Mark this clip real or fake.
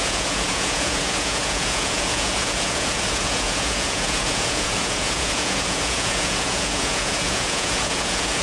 fake